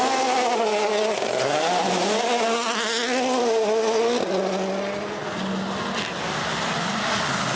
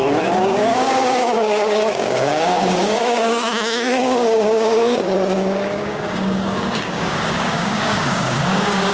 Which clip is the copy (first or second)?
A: second